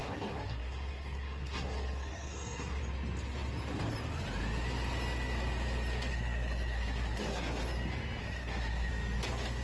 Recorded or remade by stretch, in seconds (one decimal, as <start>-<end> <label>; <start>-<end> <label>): 0.0-2.8 remade; 2.8-6.1 recorded; 6.1-7.6 remade; 7.6-8.2 recorded; 8.2-8.9 remade; 8.9-9.6 recorded